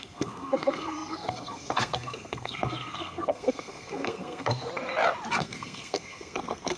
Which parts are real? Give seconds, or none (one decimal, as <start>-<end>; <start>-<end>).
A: 4.7-5.3